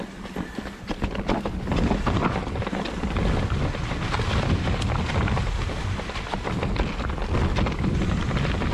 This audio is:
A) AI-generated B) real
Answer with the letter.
B